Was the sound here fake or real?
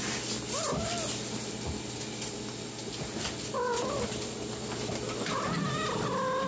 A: real